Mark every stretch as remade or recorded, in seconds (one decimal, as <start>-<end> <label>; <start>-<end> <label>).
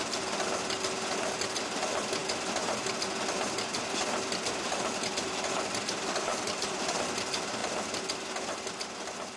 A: 0.0-6.3 recorded; 6.3-6.9 remade; 6.9-9.4 recorded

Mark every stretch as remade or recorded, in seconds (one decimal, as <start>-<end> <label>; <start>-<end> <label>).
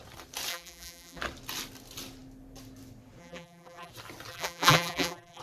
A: 0.0-0.5 recorded; 0.5-1.2 remade; 1.2-3.2 recorded; 3.2-3.9 remade; 3.9-4.3 recorded; 4.3-5.4 remade